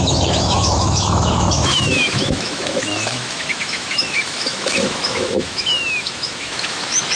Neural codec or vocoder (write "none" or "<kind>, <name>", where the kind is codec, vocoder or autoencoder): autoencoder, DAC-VAE